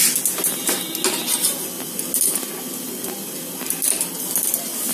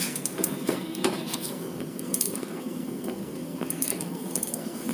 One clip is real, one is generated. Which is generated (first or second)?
second